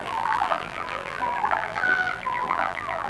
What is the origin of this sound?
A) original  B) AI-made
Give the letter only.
B